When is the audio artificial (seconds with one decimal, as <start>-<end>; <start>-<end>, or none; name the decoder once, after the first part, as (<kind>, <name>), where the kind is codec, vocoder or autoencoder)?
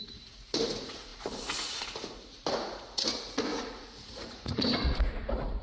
0.0-5.6 (vocoder, Vocos)